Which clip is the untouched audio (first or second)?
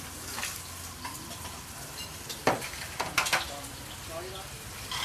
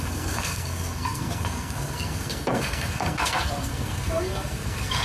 first